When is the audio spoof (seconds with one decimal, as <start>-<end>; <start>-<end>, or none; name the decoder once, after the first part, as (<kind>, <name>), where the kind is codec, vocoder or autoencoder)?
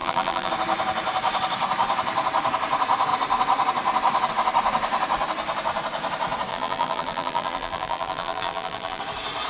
0.0-0.5 (vocoder, BigVGAN v2); 6.5-9.0